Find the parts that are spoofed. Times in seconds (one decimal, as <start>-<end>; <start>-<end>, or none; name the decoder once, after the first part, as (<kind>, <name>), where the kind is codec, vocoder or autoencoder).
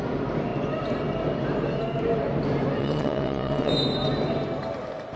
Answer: 2.8-3.7 (vocoder, WaveNeXt)